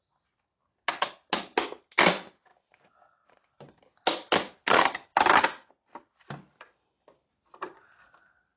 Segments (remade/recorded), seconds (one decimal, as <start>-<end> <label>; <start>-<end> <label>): 0.0-8.6 recorded